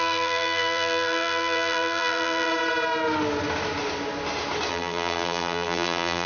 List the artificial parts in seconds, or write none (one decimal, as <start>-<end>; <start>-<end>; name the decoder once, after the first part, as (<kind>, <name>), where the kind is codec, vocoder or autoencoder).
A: 0.0-2.5 (vocoder, BigVGAN v2); 4.7-6.3